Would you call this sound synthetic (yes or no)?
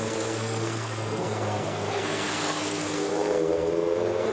yes